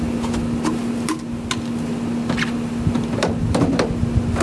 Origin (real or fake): real